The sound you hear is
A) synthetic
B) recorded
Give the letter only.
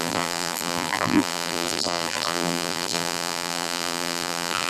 A